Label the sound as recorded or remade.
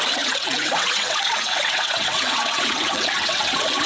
remade